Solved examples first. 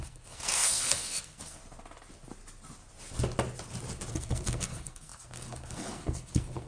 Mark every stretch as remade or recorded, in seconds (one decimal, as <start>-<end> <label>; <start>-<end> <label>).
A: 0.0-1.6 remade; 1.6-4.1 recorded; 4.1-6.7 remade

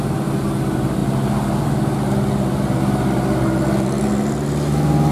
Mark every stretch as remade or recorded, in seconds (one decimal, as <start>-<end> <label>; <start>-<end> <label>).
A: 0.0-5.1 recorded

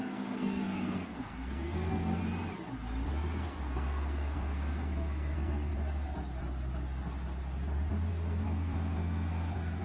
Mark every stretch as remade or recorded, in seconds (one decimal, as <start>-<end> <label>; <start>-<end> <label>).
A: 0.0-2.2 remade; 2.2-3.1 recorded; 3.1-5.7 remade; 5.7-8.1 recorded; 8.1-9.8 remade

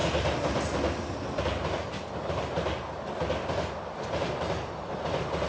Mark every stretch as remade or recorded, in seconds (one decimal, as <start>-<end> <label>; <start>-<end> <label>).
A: 0.0-5.5 recorded